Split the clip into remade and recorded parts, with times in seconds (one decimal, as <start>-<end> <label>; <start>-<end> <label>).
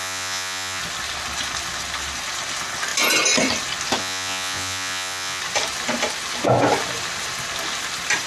0.0-0.8 remade; 0.8-4.0 recorded; 4.0-5.4 remade; 5.4-8.3 recorded